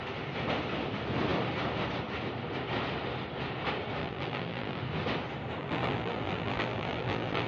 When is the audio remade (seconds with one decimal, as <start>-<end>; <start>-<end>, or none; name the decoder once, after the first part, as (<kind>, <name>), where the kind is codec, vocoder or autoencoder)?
4.0-4.8 (vocoder, BigVGAN v2); 5.6-7.5